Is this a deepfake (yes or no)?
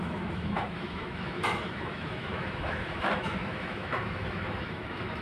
yes